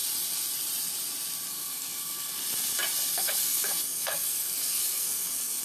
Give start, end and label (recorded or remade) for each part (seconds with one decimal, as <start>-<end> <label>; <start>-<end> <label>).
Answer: 0.0-1.5 recorded; 1.5-2.4 remade; 2.4-3.1 recorded; 3.1-5.6 remade